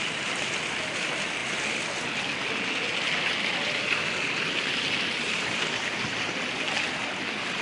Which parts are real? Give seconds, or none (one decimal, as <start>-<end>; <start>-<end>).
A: 0.0-7.6